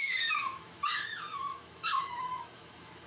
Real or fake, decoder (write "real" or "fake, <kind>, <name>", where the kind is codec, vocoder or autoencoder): fake, autoencoder, DAC-VAE